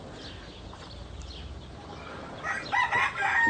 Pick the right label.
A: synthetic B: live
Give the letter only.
B